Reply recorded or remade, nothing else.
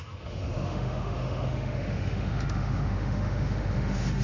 remade